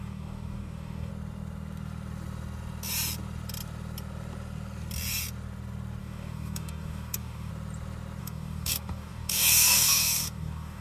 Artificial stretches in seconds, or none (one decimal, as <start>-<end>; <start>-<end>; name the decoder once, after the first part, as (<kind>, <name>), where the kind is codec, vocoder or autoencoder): 0.0-1.1 (codec, DAC); 6.0-7.5; 8.2-10.8